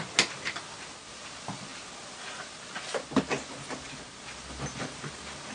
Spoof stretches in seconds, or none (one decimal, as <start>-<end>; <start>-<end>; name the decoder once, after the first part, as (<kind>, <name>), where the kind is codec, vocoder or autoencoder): none